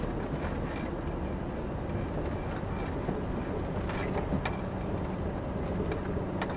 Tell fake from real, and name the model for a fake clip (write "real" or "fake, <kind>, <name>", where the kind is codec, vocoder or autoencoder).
real